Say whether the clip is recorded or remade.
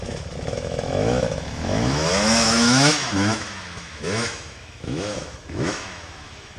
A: remade